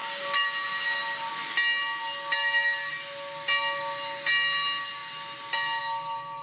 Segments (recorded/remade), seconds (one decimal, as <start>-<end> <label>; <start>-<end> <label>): 0.0-6.4 recorded